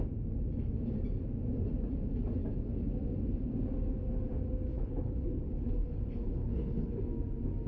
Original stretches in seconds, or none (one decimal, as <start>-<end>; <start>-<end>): 0.0-4.7; 7.0-7.7

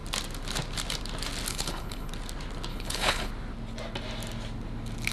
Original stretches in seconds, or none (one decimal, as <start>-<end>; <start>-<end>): 0.0-1.5; 2.1-2.7; 3.3-5.1